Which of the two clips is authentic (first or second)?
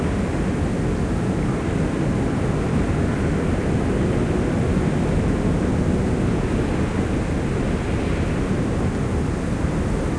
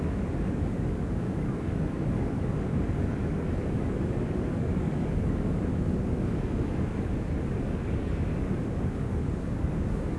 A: first